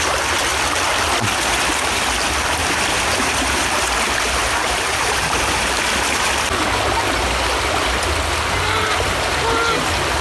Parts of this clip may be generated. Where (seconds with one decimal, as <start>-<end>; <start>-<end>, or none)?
2.6-3.6; 4.4-5.8